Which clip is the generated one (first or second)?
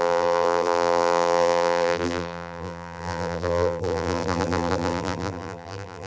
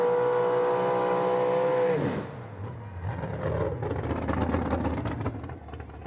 first